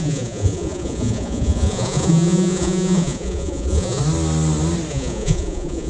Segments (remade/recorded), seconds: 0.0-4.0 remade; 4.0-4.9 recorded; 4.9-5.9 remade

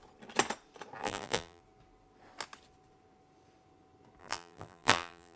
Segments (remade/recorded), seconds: 0.0-1.0 recorded; 1.0-1.6 remade; 1.6-4.2 recorded; 4.2-5.4 remade